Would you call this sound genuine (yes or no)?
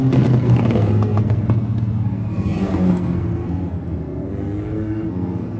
no